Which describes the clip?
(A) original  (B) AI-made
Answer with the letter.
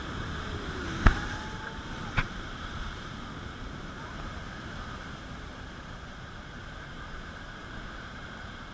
B